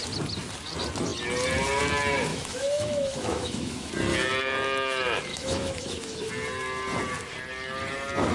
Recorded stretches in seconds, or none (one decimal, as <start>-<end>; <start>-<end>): 0.0-2.3; 3.9-5.3; 6.3-8.3